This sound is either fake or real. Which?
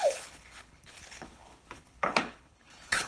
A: fake